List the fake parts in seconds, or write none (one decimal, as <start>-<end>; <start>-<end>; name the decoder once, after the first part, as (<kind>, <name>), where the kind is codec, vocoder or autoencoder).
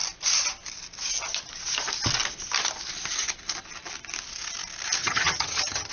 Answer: 5.0-5.9 (vocoder, HiFi-GAN)